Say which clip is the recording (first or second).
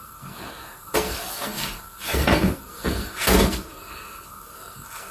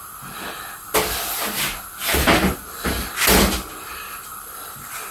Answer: second